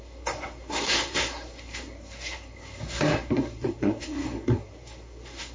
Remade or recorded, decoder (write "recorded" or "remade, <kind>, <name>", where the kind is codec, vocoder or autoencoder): remade, codec, SNAC